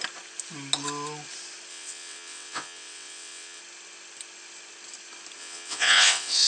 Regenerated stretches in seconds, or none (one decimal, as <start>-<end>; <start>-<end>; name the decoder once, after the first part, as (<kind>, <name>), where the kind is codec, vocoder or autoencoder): 1.7-3.6 (vocoder, WaveNeXt); 5.4-6.5